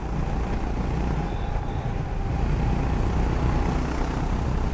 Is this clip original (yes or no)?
yes